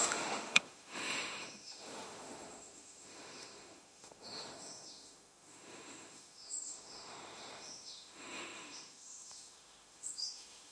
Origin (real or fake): fake